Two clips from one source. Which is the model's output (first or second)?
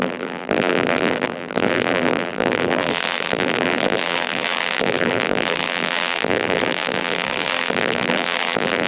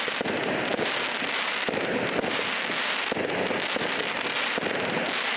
first